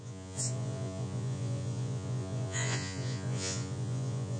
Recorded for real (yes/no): no